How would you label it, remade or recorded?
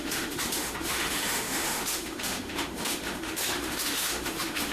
remade